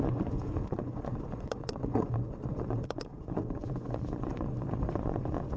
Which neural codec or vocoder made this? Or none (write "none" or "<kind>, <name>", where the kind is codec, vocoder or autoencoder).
vocoder, Vocos